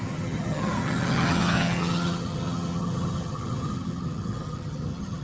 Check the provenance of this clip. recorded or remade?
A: remade